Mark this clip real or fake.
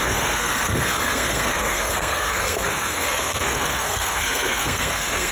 fake